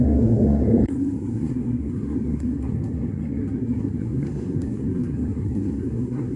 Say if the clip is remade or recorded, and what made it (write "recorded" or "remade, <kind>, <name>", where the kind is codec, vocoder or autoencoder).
remade, codec, SNAC